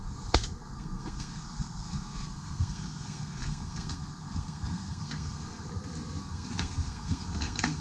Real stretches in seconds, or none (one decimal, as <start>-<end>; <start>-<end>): 5.7-6.2